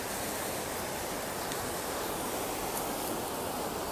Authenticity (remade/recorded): recorded